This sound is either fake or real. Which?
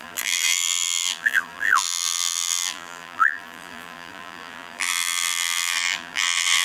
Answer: fake